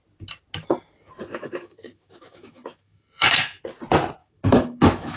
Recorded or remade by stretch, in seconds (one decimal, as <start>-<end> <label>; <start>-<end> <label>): 0.0-1.3 recorded; 1.3-3.6 remade; 3.6-4.2 recorded; 4.2-5.2 remade